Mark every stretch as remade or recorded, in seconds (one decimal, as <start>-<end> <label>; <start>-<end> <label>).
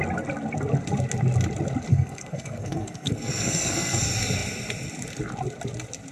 0.0-1.9 recorded; 1.9-4.0 remade; 4.0-6.1 recorded